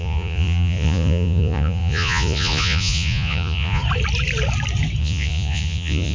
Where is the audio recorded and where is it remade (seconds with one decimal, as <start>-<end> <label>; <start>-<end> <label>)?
0.0-3.8 remade; 3.8-5.0 recorded; 5.0-6.1 remade